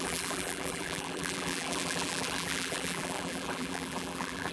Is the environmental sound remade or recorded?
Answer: remade